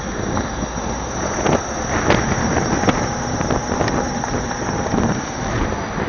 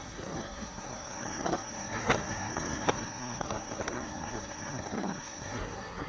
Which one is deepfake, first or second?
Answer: second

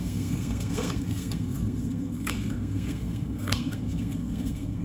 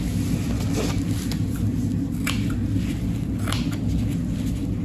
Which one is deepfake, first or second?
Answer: first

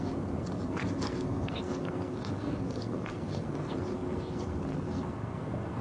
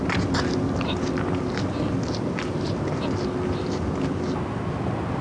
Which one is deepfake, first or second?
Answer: first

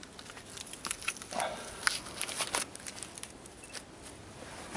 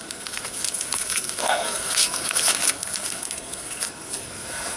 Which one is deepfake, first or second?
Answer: second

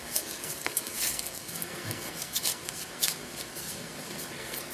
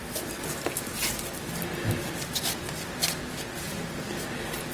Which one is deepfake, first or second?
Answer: first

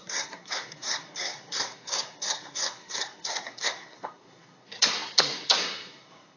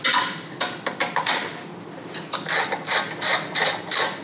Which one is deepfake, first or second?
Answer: first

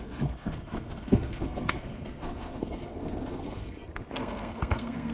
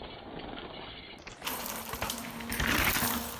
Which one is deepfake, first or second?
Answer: first